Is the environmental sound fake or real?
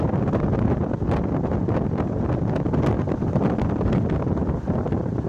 real